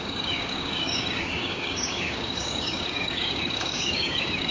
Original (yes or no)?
no